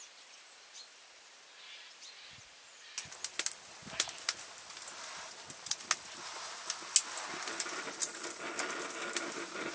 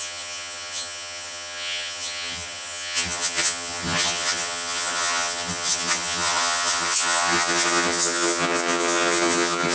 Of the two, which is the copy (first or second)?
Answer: second